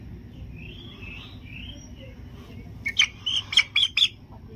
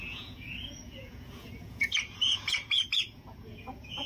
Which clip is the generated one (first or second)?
second